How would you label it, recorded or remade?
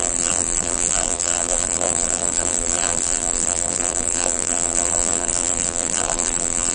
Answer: remade